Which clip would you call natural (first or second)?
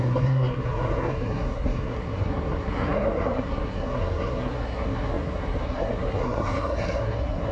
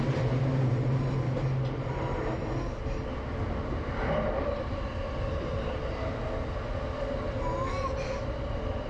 second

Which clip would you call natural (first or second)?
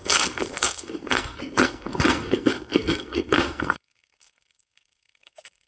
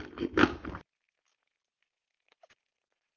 second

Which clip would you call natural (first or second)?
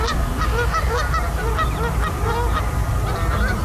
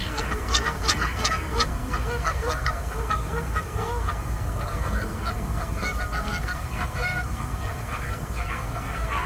first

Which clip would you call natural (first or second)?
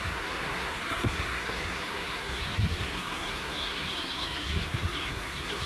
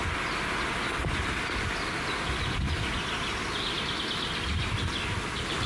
second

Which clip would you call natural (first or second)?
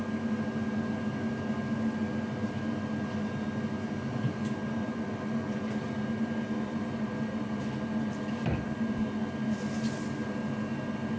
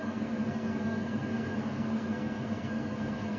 first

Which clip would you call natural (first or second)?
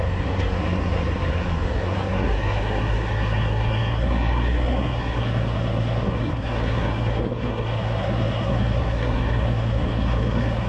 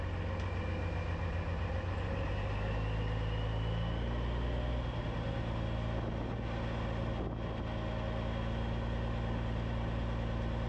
second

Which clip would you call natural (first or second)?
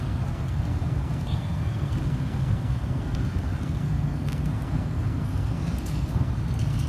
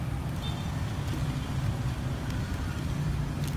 second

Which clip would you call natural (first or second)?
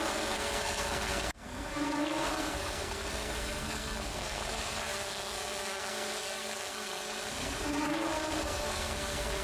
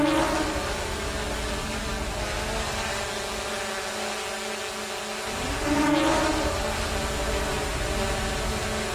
second